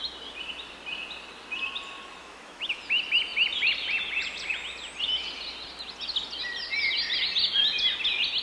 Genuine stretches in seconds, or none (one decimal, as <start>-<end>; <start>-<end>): 0.0-2.2; 2.8-8.4